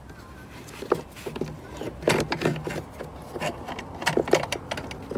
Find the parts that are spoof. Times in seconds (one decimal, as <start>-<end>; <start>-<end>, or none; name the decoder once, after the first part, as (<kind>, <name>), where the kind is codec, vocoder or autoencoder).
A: none